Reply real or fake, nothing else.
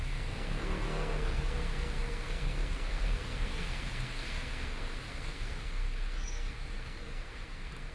fake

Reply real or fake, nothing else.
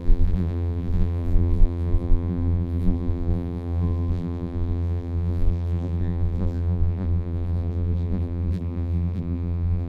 fake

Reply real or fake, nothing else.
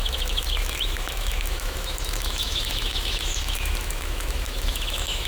fake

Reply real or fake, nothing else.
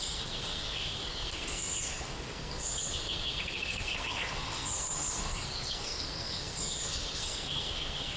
fake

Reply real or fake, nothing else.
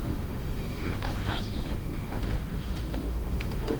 fake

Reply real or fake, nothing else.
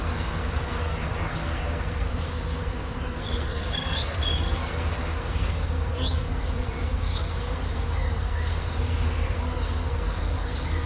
fake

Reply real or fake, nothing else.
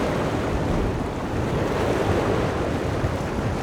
real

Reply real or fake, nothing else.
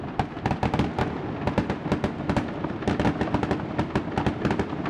real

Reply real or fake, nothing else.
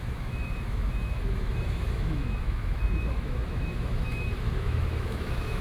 fake